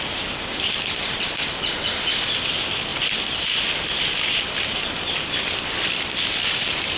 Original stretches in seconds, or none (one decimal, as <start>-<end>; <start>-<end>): none